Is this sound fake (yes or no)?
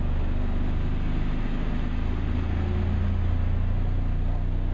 no